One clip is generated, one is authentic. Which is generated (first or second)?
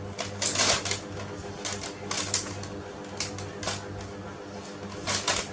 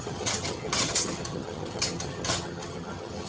second